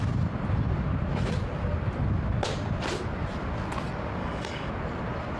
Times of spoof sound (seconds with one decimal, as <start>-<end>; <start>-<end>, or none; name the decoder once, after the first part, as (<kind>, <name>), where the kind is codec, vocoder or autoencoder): 4.2-4.7 (codec, DAC)